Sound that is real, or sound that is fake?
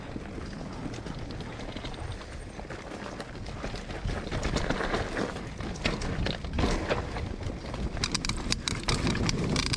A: real